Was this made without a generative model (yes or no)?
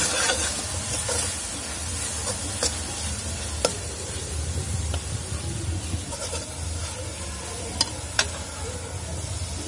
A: yes